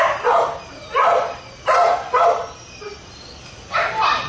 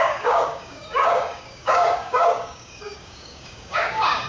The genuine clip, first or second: first